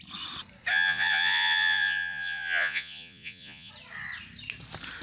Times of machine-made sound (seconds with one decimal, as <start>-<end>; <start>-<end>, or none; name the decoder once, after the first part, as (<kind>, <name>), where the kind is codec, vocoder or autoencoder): 0.7-3.7 (vocoder, Vocos)